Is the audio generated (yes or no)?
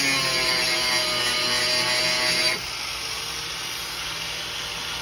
no